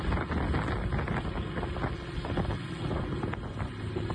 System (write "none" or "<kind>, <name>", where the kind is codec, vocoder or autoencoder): none